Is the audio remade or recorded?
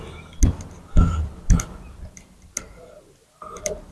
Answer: recorded